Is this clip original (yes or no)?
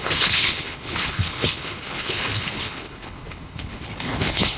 no